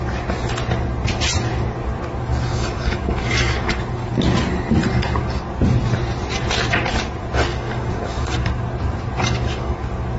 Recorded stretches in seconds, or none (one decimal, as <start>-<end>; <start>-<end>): 0.0-2.5; 3.7-4.9; 5.4-7.5; 8.5-9.2; 9.7-10.2